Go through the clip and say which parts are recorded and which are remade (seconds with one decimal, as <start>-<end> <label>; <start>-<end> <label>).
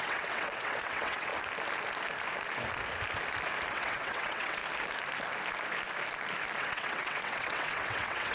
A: 0.0-1.3 remade; 1.3-3.7 recorded; 3.7-4.6 remade; 4.6-6.6 recorded; 6.6-8.3 remade